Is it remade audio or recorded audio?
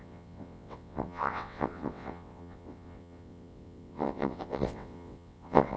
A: remade